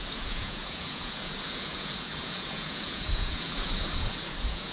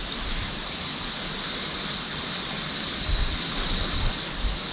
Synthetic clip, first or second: first